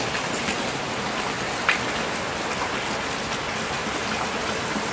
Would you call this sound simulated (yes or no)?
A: no